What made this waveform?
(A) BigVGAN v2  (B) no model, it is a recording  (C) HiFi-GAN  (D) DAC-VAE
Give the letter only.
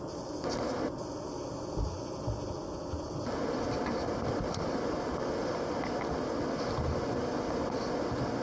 B